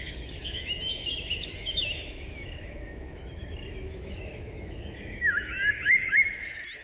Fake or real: fake